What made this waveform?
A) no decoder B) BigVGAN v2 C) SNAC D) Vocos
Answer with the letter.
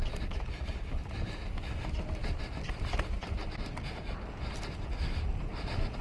A